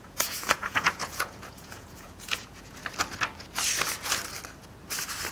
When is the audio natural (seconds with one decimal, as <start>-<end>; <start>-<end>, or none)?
2.8-5.3